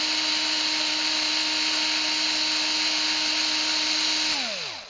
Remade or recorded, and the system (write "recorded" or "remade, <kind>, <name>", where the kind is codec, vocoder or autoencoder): recorded